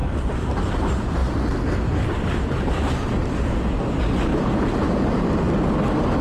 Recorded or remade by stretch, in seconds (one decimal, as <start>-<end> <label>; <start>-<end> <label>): 0.0-0.5 remade; 0.5-1.2 recorded; 1.2-3.6 remade; 3.6-4.3 recorded; 4.3-5.4 remade; 5.4-6.2 recorded